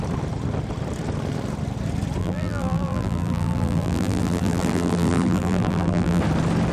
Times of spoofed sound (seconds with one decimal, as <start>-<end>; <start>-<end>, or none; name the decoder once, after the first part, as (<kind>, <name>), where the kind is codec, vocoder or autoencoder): 2.2-6.2 (vocoder, BigVGAN v2)